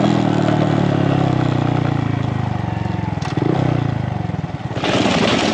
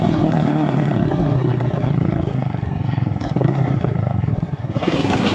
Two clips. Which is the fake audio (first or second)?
second